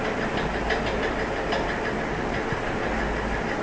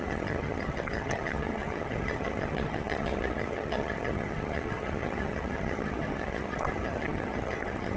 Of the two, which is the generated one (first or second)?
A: second